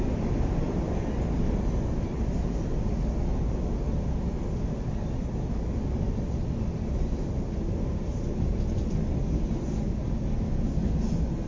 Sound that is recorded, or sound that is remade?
recorded